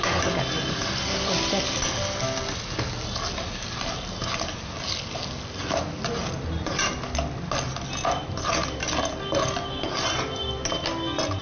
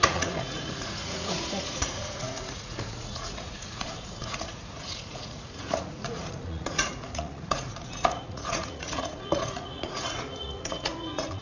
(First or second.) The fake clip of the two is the second